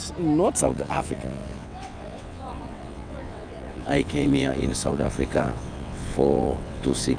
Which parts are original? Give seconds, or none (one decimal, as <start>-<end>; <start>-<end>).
0.0-0.6